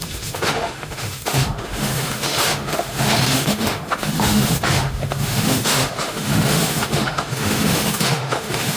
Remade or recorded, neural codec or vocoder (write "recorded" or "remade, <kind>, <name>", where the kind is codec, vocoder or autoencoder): remade, autoencoder, DAC-VAE